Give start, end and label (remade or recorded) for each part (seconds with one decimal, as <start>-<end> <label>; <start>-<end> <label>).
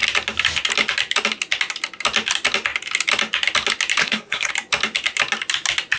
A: 0.0-4.0 recorded; 4.0-4.5 remade; 4.5-6.0 recorded